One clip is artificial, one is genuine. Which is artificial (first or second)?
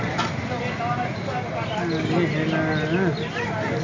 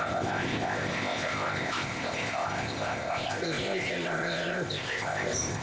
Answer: second